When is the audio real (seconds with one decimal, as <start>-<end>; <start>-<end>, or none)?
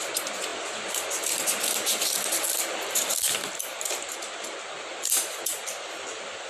0.0-4.9; 5.6-6.5